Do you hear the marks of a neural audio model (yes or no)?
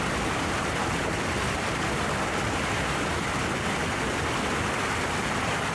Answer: no